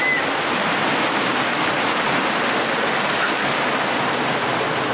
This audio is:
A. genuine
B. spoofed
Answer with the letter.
A